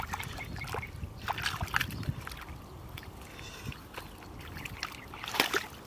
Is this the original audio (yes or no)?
yes